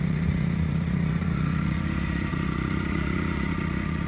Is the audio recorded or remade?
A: remade